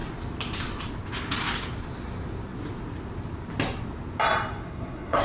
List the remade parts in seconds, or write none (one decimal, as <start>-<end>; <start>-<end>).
4.6-5.2